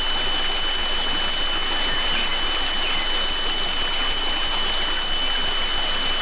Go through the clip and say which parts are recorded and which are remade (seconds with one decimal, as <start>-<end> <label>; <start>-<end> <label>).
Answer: 0.0-6.2 recorded

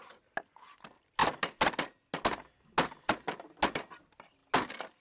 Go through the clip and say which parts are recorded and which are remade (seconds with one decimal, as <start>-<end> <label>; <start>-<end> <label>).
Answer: 0.0-5.0 recorded

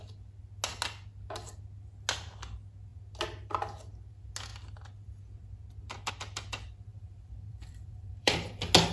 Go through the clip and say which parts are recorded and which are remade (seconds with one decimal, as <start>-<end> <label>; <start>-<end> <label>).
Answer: 0.0-6.9 recorded; 6.9-8.5 remade; 8.5-8.9 recorded

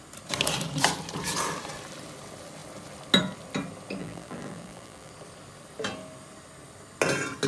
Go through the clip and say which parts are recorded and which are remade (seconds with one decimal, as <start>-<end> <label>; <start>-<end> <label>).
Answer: 0.0-4.0 recorded; 4.0-5.1 remade; 5.1-7.5 recorded

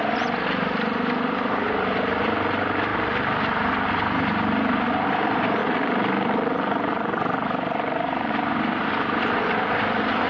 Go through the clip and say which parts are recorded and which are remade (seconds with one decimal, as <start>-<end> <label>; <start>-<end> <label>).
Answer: 0.0-5.6 recorded; 5.6-8.3 remade; 8.3-10.3 recorded

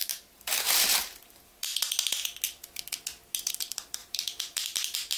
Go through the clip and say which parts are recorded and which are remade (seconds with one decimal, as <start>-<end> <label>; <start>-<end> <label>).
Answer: 0.0-1.7 remade; 1.7-3.5 recorded; 3.5-5.2 remade

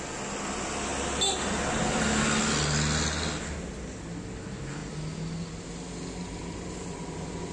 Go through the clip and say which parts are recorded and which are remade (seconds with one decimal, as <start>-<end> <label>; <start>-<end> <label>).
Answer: 0.0-7.5 recorded

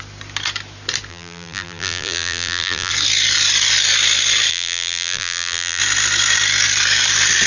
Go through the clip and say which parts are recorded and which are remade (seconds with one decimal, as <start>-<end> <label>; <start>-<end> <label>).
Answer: 0.0-1.1 recorded; 1.1-2.9 remade; 2.9-4.5 recorded; 4.5-5.8 remade; 5.8-7.5 recorded